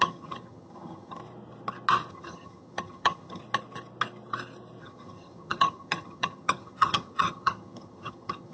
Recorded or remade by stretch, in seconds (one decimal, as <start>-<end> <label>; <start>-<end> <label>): 0.0-1.2 remade; 1.2-2.1 recorded; 2.1-3.4 remade; 3.4-4.8 recorded; 4.8-8.5 remade